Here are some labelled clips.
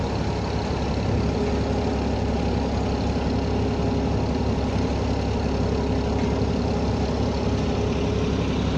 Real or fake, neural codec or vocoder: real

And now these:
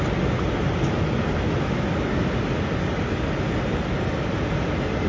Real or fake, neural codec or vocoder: real